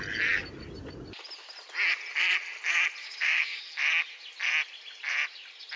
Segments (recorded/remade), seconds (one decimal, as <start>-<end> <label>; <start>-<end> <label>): 0.0-3.0 recorded; 3.0-3.6 remade; 3.6-5.8 recorded